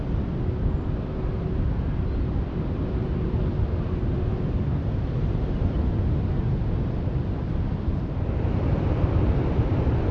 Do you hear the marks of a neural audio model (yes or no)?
no